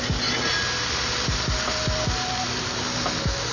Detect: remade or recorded recorded